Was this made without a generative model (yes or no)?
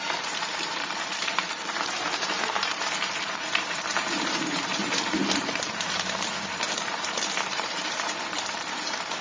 no